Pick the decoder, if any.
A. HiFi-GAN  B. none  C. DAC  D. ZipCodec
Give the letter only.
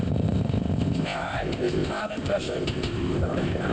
D